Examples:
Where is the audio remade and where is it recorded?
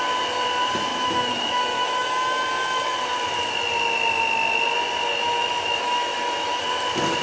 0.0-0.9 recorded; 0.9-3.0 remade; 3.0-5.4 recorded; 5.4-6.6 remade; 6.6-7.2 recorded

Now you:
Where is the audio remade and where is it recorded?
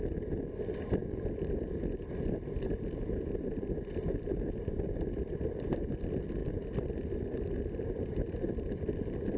0.0-9.4 recorded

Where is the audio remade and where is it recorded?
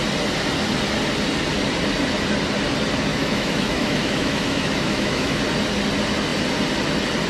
0.0-3.1 recorded; 3.1-5.4 remade; 5.4-7.3 recorded